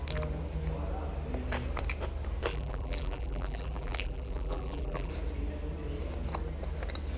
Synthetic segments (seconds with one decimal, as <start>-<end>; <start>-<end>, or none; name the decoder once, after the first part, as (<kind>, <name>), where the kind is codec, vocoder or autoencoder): 2.5-5.1 (vocoder, BigVGAN v2)